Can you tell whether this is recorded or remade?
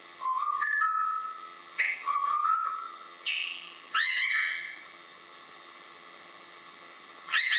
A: remade